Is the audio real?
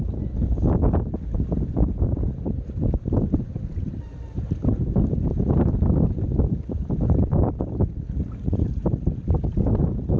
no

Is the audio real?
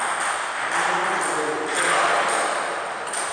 yes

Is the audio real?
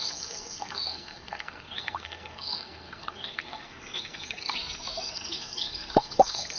no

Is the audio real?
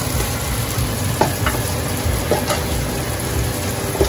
yes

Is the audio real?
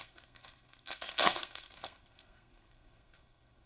no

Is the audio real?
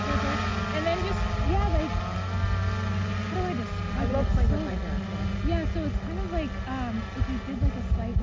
yes